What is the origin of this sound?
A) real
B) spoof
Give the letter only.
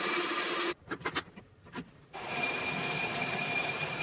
B